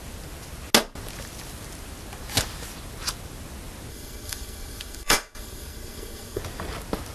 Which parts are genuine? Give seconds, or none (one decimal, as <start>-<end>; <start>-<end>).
0.0-3.9; 6.4-7.1